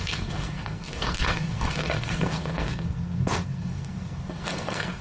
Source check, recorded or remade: remade